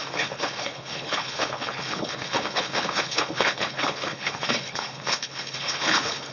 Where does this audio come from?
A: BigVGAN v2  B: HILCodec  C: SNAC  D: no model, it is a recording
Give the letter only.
B